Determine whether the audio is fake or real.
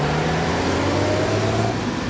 real